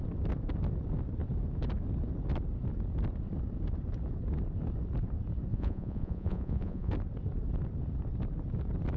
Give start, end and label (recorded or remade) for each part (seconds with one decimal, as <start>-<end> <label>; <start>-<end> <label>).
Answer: 0.0-5.5 recorded; 5.5-6.9 remade; 6.9-9.0 recorded